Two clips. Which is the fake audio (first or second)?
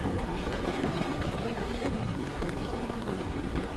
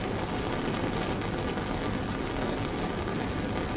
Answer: first